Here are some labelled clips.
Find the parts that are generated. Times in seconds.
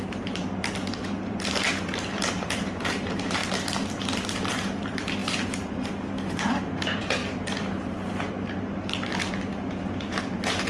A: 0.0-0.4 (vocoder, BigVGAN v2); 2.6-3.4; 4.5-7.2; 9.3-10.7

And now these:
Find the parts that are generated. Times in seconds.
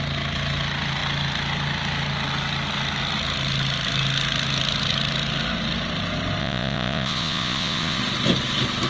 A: 6.4-8.0 (vocoder, Vocos)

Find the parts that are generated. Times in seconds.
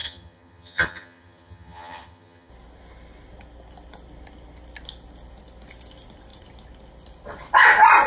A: 0.0-2.5 (vocoder, HiFi-GAN)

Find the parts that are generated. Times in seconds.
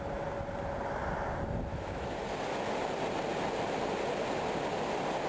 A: 1.7-2.2 (autoencoder, DAC-VAE)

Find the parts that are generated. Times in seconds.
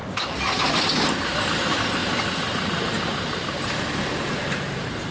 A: 2.0-5.1 (vocoder, BigVGAN v2)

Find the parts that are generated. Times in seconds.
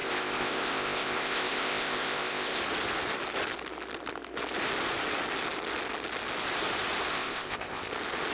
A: 0.0-2.6 (codec, ZipCodec); 7.1-7.9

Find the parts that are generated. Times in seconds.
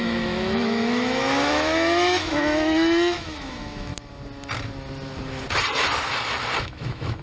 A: 0.0-3.9 (autoencoder, DAC-VAE); 6.6-7.2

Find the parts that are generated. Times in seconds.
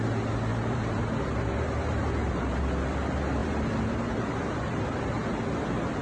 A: 0.5-2.6 (vocoder, BigVGAN v2); 3.4-5.0